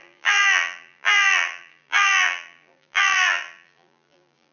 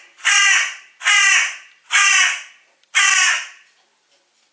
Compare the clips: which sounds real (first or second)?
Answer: second